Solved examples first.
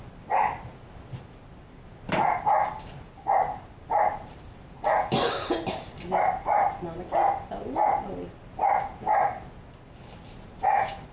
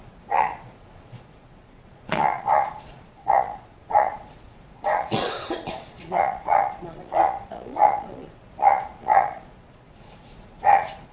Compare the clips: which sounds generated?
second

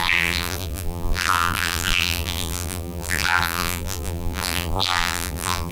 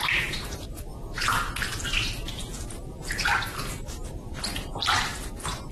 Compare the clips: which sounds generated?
first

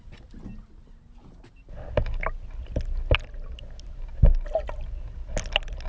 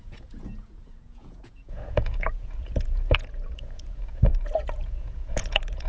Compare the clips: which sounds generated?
second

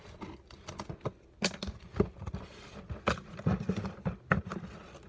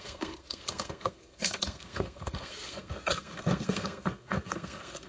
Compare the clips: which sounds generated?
second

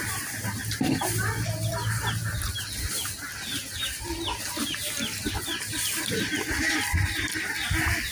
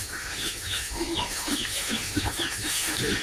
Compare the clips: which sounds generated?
second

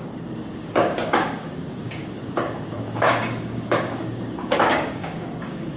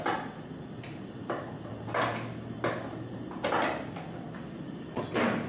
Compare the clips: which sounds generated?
first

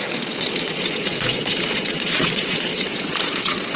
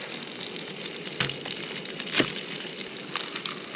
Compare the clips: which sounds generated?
first